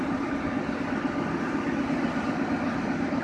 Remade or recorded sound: recorded